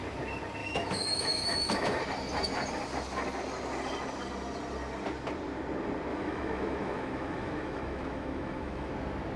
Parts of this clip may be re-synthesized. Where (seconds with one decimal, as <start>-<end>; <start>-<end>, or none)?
0.6-2.0; 6.1-8.9